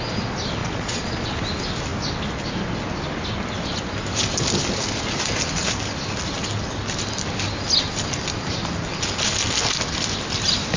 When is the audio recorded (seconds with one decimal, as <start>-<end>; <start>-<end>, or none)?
0.0-0.6; 1.4-10.8